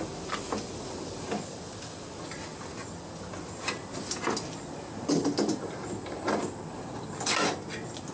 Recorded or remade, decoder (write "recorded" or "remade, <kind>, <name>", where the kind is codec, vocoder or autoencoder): recorded